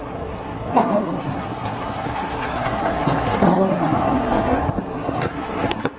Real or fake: fake